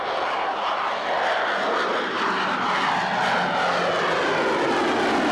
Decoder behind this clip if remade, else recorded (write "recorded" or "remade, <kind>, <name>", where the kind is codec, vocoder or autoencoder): recorded